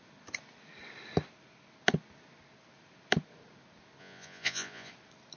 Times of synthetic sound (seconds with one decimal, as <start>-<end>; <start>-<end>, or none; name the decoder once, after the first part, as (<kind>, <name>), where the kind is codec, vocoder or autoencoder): 4.0-4.9 (vocoder, Vocos)